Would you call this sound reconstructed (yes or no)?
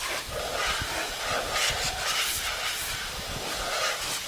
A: no